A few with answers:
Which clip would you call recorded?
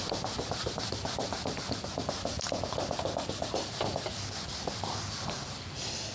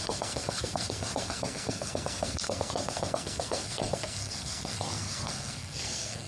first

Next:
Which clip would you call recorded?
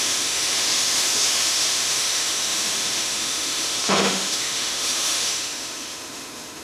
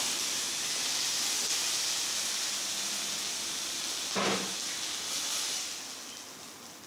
second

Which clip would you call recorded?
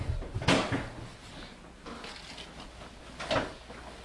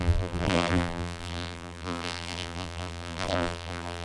first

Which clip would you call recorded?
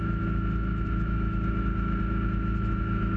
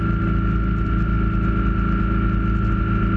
second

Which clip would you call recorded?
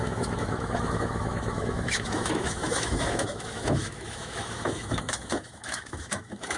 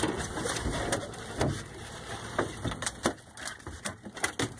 second